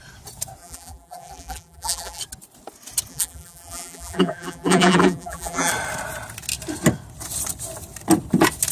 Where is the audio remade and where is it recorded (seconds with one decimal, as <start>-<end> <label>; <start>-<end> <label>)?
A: 0.0-0.6 recorded; 0.6-2.2 remade; 2.2-3.1 recorded; 3.1-5.7 remade; 5.7-8.7 recorded